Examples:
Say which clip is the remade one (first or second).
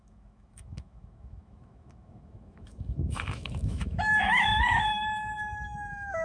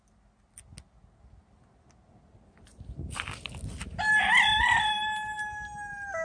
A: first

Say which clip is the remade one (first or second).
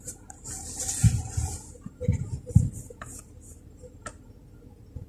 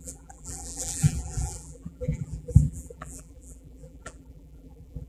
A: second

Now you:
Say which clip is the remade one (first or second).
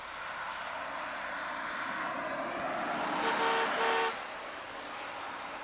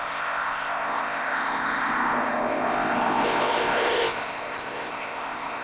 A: second